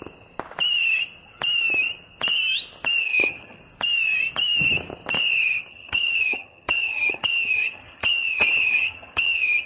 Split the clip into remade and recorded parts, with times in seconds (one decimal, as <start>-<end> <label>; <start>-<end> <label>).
0.0-3.0 recorded; 3.0-3.6 remade; 3.6-5.7 recorded; 5.7-9.7 remade